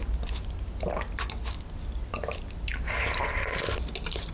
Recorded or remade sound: recorded